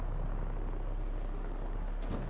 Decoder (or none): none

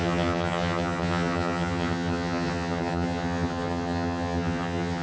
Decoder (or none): vocoder, HiFi-GAN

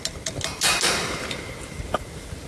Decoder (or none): none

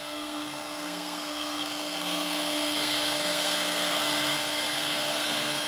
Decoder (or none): codec, SNAC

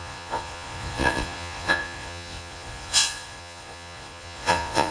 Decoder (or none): vocoder, Vocos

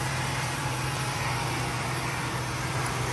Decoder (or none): vocoder, BigVGAN v2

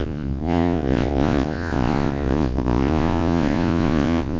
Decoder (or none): vocoder, Vocos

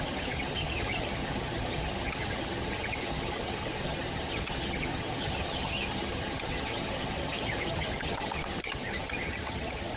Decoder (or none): vocoder, HiFi-GAN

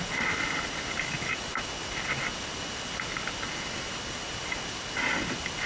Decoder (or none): none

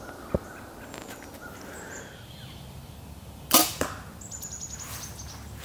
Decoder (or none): none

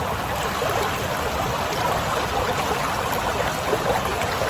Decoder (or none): none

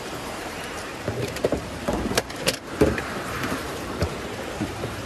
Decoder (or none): vocoder, BigVGAN v2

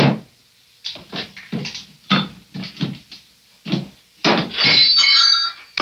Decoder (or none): none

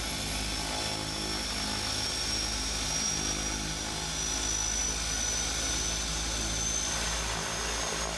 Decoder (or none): none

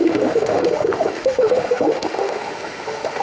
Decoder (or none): autoencoder, DAC-VAE